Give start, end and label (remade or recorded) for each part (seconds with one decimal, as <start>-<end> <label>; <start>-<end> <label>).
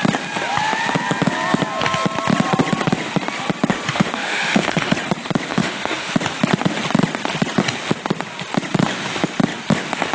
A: 0.0-3.9 recorded; 3.9-4.9 remade; 4.9-5.5 recorded; 5.5-6.1 remade; 6.1-10.1 recorded